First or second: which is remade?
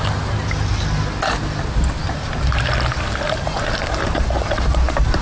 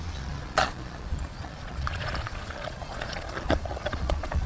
second